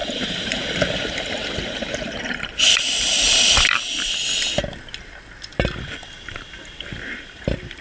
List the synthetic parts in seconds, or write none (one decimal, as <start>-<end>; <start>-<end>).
0.0-3.6; 6.9-7.8